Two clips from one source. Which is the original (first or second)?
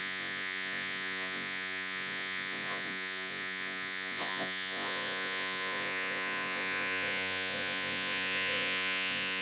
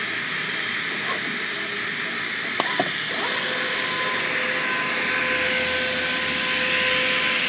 second